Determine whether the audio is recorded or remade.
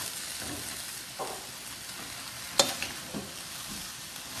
recorded